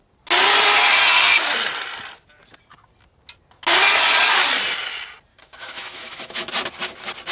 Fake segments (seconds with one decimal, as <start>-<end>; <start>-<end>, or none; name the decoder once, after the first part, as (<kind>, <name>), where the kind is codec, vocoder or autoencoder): 5.3-6.5 (autoencoder, DAC-VAE)